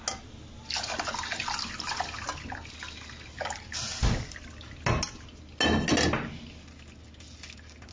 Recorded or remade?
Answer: recorded